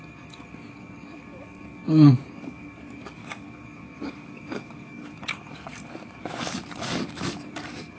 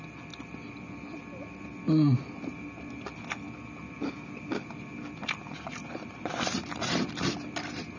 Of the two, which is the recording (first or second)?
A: second